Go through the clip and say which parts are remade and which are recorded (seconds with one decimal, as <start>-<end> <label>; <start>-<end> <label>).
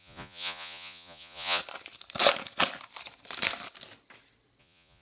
0.0-1.6 remade; 1.6-4.6 recorded; 4.6-5.0 remade